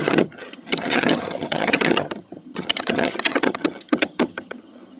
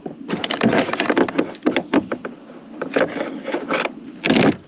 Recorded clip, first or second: second